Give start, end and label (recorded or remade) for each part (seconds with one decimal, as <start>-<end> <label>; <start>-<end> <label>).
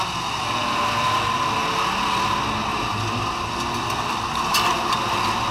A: 0.0-5.5 recorded